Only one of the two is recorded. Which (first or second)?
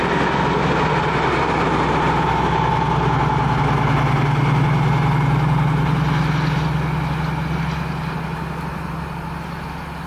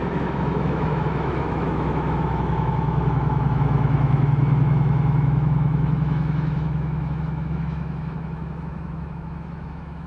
first